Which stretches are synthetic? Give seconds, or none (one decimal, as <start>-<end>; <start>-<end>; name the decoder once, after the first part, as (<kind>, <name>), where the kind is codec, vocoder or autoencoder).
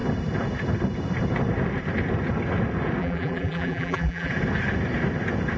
3.0-4.3 (vocoder, BigVGAN v2)